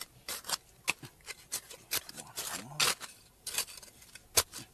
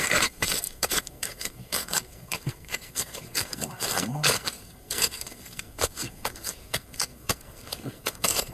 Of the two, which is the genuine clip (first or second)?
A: first